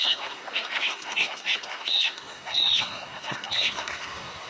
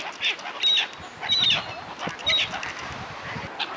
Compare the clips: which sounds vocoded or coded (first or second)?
first